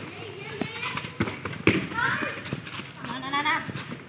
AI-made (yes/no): no